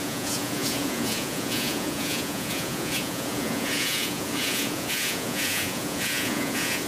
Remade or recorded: remade